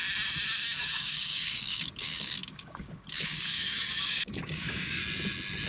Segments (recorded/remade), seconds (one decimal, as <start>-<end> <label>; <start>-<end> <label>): 0.0-0.8 recorded; 0.8-5.0 remade; 5.0-5.7 recorded